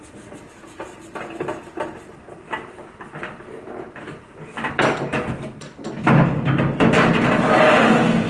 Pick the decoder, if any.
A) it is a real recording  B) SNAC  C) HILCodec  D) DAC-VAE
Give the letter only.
A